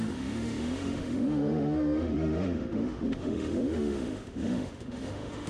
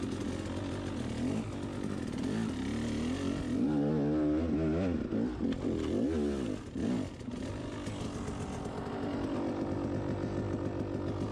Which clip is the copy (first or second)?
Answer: first